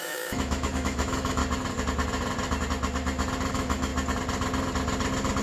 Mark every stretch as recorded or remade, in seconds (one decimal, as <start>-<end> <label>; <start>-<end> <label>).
0.0-1.4 remade; 1.4-3.5 recorded; 3.5-3.9 remade; 3.9-5.4 recorded